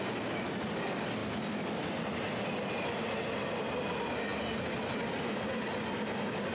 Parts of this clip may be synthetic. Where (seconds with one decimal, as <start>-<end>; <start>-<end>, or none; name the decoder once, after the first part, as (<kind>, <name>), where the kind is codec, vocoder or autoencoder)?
none